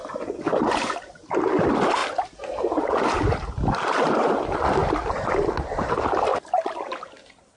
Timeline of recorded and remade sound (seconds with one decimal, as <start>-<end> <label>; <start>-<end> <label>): 0.0-7.6 recorded